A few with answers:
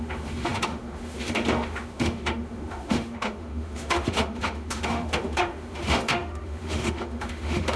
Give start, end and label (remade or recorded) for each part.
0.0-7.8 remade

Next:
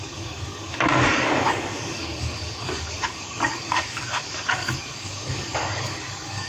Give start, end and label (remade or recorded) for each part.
0.0-6.5 remade

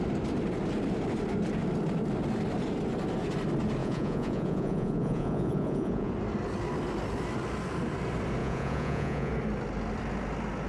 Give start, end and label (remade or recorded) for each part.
0.0-3.8 recorded; 3.8-6.1 remade; 6.1-8.4 recorded; 8.4-9.3 remade; 9.3-10.7 recorded

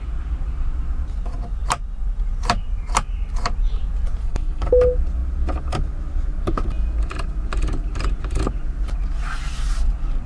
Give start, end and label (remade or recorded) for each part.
0.0-4.2 recorded; 4.2-4.7 remade; 4.7-10.3 recorded